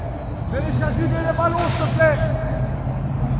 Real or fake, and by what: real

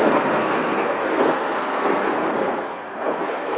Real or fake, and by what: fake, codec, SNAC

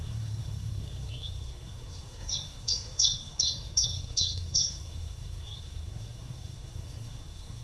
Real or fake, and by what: fake, codec, SNAC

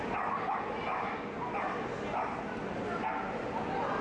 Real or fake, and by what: real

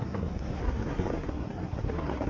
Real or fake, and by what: fake, codec, SNAC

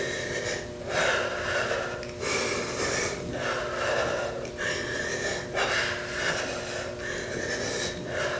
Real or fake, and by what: real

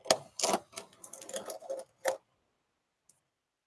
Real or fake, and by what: real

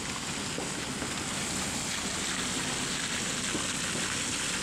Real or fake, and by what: real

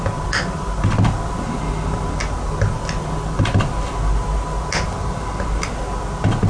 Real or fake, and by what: real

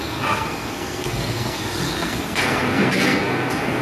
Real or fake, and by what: fake, codec, SNAC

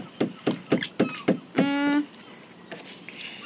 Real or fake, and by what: real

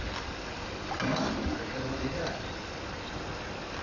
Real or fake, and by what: real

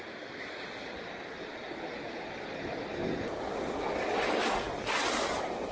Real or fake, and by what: real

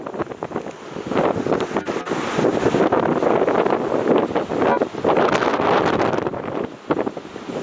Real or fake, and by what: real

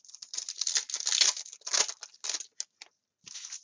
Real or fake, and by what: real